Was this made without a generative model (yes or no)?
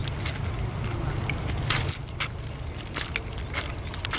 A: yes